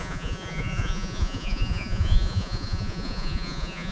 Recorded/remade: remade